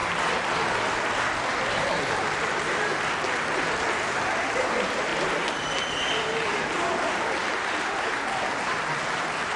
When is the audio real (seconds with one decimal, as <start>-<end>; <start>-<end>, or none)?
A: 0.0-9.6